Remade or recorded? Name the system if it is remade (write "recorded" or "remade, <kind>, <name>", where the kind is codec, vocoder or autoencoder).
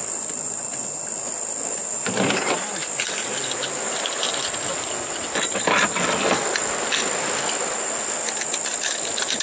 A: recorded